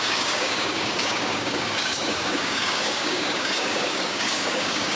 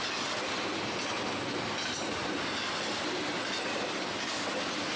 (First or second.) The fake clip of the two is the first